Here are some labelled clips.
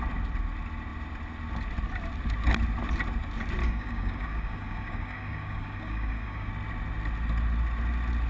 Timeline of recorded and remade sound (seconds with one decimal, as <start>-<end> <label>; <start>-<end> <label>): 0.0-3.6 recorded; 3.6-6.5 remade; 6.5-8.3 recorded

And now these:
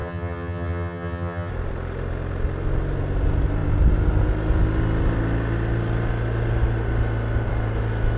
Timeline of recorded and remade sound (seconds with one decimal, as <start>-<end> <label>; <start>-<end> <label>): 0.0-1.5 remade; 1.5-8.2 recorded

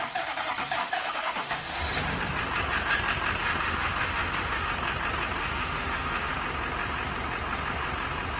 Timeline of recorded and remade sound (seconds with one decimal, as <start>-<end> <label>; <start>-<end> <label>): 0.0-0.8 recorded; 0.8-1.8 remade; 1.8-3.4 recorded; 3.4-4.7 remade; 4.7-5.4 recorded; 5.4-6.3 remade; 6.3-8.4 recorded

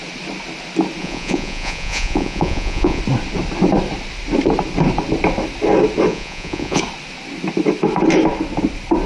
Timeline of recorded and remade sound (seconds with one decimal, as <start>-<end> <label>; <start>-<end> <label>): 0.0-1.0 recorded; 1.0-3.0 remade; 3.0-6.1 recorded; 6.1-6.8 remade; 6.8-9.1 recorded

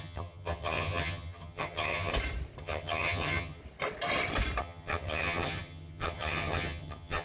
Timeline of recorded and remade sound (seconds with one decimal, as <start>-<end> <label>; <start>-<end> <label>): 0.0-2.1 remade; 2.1-2.6 recorded; 2.6-3.6 remade; 3.6-4.6 recorded; 4.6-7.2 remade

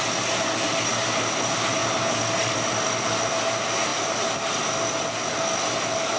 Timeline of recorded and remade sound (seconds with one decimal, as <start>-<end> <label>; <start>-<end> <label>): 0.0-6.2 recorded

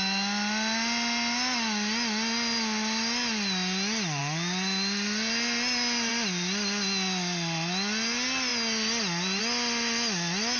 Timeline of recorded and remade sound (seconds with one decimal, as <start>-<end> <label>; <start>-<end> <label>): 0.0-10.6 recorded

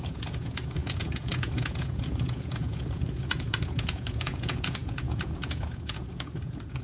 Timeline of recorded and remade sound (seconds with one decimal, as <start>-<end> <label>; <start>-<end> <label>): 0.0-6.8 remade